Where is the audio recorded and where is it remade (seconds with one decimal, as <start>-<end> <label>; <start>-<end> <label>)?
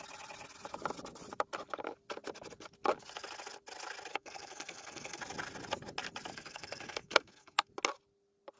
0.0-4.1 recorded; 4.1-5.2 remade; 5.2-6.3 recorded; 6.3-7.7 remade; 7.7-8.6 recorded